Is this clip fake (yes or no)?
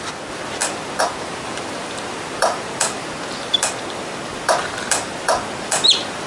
yes